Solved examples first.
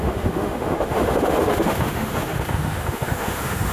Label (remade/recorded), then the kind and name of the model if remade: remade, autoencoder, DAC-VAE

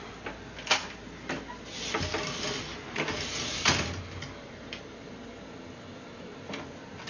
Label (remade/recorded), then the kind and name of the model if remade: recorded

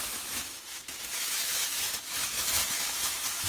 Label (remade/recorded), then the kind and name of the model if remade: remade, autoencoder, DAC-VAE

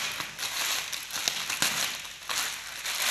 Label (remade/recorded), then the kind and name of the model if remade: recorded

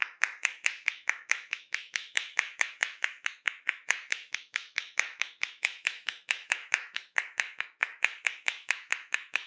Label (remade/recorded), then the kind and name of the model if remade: remade, autoencoder, DAC-VAE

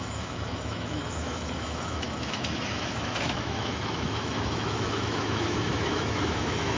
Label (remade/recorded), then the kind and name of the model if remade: remade, autoencoder, DAC-VAE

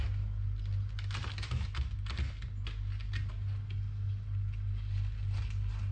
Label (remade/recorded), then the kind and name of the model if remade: recorded